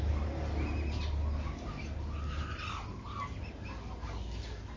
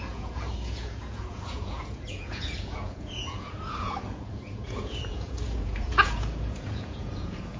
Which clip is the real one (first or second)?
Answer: first